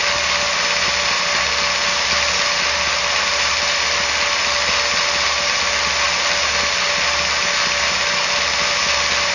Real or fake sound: real